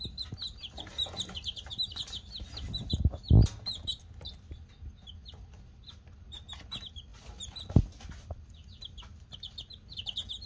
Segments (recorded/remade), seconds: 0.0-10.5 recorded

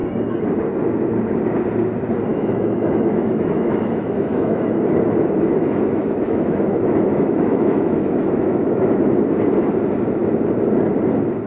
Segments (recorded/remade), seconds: 0.0-2.3 recorded; 2.3-4.8 remade; 4.8-5.5 recorded; 5.5-9.1 remade; 9.1-11.5 recorded

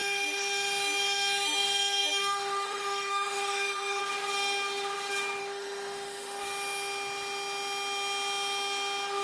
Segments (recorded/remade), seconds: 0.0-4.0 remade; 4.0-5.4 recorded; 5.4-6.4 remade; 6.4-9.2 recorded

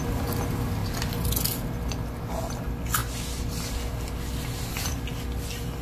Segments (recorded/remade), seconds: 0.0-5.8 recorded

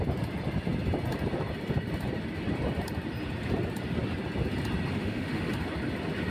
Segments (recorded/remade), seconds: 0.0-4.9 recorded; 4.9-5.5 remade; 5.5-6.3 recorded

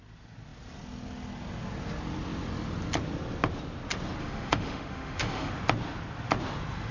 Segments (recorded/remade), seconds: 0.0-4.2 recorded; 4.2-5.5 remade; 5.5-6.9 recorded